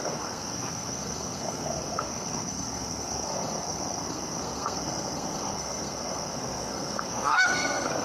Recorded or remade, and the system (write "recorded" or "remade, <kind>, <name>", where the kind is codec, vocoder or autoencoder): remade, codec, SNAC